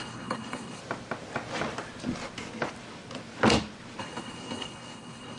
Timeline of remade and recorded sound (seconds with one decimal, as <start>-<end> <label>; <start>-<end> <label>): 0.0-0.8 remade; 0.8-4.0 recorded; 4.0-5.4 remade